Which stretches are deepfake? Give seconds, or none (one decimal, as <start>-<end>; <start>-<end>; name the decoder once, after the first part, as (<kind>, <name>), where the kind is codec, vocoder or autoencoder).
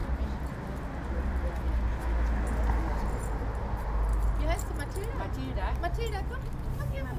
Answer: none